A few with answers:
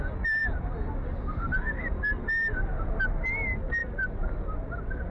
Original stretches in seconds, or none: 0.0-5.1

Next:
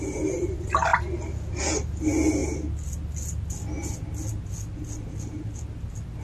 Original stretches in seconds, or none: 0.0-6.2

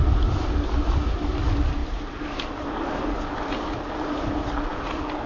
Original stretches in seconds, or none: 0.0-5.3

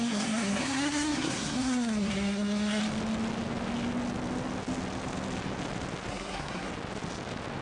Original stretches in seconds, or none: 2.8-6.1; 6.7-7.6